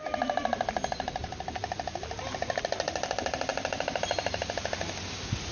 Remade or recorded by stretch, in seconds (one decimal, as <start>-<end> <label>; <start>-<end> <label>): 0.0-5.5 recorded